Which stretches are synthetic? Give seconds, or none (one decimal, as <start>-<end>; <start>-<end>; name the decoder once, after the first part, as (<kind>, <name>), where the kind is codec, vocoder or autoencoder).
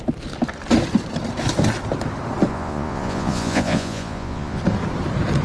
2.5-4.6 (vocoder, Vocos)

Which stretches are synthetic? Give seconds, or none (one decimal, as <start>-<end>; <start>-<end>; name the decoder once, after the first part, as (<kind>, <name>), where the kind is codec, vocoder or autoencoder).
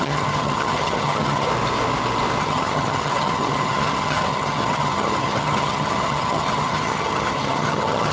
0.0-1.5 (vocoder, HiFi-GAN); 2.4-8.1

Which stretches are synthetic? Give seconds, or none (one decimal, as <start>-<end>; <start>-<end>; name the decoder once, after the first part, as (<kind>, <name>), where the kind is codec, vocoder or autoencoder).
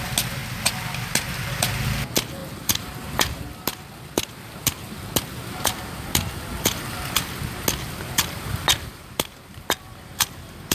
2.4-3.4 (vocoder, BigVGAN v2)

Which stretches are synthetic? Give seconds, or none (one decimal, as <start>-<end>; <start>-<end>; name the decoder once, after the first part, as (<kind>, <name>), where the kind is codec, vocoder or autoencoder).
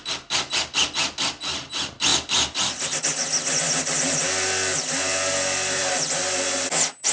none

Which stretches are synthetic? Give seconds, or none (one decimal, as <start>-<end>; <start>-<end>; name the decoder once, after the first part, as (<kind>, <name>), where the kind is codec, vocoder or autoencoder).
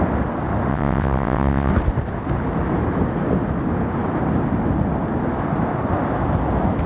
0.7-1.7 (vocoder, WaveNeXt)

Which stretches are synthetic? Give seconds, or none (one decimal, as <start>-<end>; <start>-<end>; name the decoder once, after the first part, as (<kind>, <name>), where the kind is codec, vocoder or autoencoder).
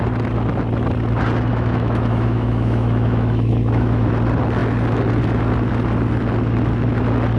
1.5-4.1 (autoencoder, DAC-VAE)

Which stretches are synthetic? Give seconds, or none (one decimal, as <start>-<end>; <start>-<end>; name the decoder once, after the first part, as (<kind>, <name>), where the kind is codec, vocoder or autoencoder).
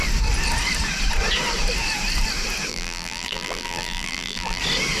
2.7-4.6 (vocoder, BigVGAN v2)